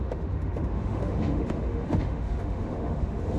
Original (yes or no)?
no